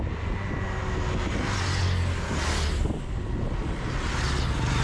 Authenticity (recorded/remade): recorded